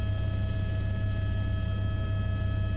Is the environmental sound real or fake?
real